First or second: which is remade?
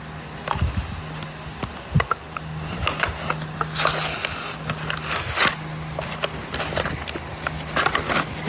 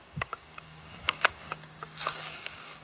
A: second